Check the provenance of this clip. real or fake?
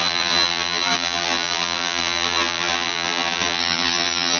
fake